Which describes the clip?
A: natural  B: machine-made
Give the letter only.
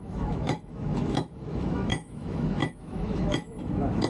B